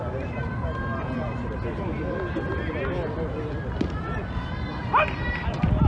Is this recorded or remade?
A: recorded